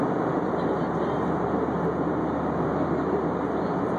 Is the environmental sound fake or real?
real